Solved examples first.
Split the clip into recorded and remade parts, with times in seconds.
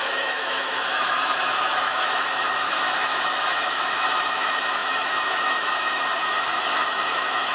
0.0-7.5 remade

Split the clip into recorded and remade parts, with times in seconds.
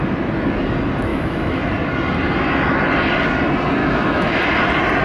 0.0-1.1 recorded; 1.1-1.6 remade; 1.6-3.8 recorded; 3.8-4.4 remade; 4.4-5.0 recorded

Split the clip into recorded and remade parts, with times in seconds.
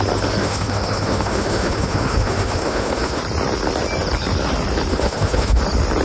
0.0-0.4 recorded; 0.4-3.2 remade; 3.2-4.9 recorded; 4.9-5.6 remade; 5.6-6.0 recorded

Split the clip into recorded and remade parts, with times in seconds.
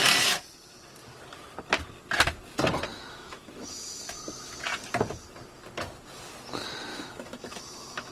0.0-2.9 recorded; 2.9-4.2 remade; 4.2-6.9 recorded; 6.9-8.1 remade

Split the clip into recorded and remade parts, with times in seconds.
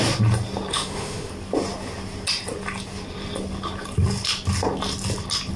0.0-0.7 recorded; 0.7-1.3 remade; 1.3-5.6 recorded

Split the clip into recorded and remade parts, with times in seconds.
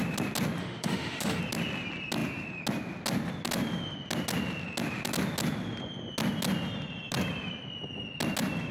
0.0-0.6 recorded; 0.6-1.4 remade; 1.4-8.7 recorded